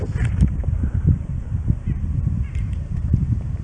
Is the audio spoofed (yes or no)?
yes